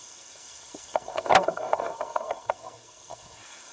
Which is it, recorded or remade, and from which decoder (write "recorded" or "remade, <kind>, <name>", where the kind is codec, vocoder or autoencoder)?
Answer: remade, codec, SNAC